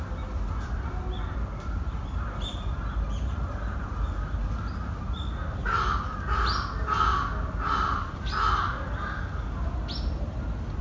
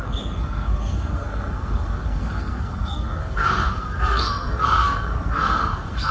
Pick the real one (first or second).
first